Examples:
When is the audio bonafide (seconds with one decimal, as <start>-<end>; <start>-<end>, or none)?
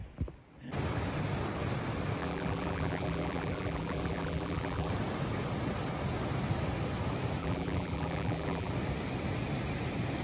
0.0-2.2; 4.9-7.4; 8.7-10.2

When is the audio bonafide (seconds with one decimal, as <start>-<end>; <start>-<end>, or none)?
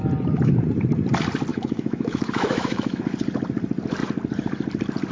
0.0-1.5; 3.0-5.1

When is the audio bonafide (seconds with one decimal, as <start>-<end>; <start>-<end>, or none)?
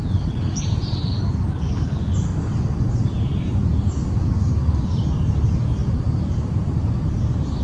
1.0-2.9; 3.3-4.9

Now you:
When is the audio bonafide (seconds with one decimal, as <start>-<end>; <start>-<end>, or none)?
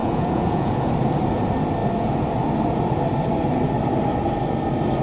0.9-5.0